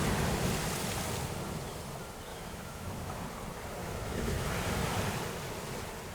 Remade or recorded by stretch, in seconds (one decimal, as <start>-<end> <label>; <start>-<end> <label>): 0.0-2.3 recorded; 2.3-3.2 remade; 3.2-3.8 recorded; 3.8-4.5 remade; 4.5-6.1 recorded